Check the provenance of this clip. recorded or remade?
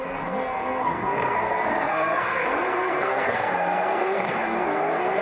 remade